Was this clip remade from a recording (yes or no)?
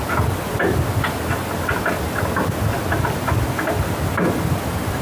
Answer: no